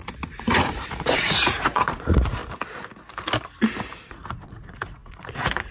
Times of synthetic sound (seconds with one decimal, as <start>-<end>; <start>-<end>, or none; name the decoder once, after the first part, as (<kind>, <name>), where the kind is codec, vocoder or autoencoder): 0.0-2.4 (vocoder, Vocos); 4.1-5.7